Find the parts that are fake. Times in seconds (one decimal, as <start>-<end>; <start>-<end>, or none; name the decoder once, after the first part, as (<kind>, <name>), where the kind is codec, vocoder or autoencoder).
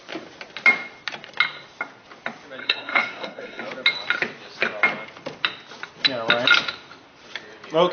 2.6-3.6 (codec, SNAC)